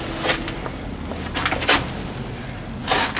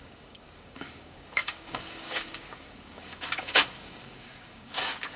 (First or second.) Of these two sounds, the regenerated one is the second